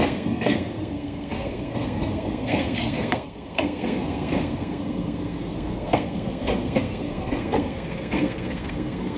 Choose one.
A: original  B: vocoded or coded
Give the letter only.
B